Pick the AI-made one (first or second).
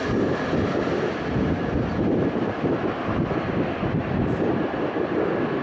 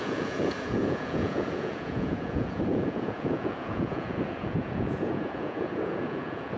second